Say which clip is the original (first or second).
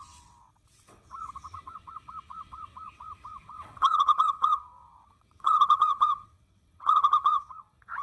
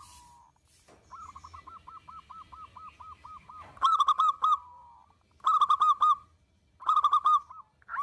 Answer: second